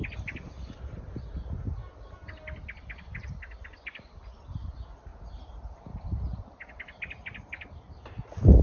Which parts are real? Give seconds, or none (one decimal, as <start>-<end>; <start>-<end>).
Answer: 0.0-2.2; 4.4-5.1; 7.4-8.6